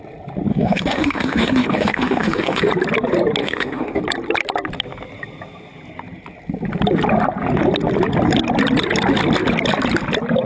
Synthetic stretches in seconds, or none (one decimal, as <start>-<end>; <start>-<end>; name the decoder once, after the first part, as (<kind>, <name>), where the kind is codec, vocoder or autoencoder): 0.5-2.7 (autoencoder, DAC-VAE); 3.4-4.0